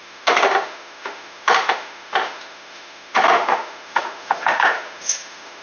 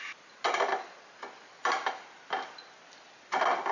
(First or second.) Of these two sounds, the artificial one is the first